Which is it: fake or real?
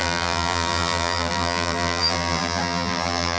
fake